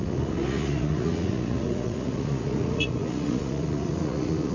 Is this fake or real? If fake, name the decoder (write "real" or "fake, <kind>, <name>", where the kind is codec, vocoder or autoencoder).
fake, vocoder, Vocos